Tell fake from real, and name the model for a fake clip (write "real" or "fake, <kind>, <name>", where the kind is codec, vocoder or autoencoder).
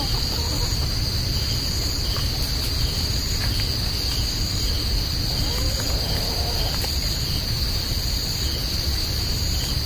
real